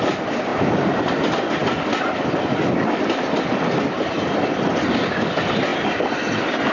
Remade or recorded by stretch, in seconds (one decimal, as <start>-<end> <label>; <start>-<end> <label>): 0.0-0.5 recorded; 0.5-1.0 remade; 1.0-5.7 recorded; 5.7-6.7 remade